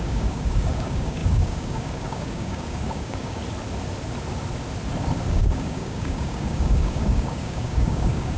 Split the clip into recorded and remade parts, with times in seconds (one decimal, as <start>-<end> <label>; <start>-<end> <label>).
0.0-3.4 remade; 3.4-5.3 recorded; 5.3-8.4 remade